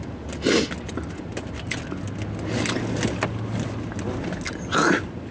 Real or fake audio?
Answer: real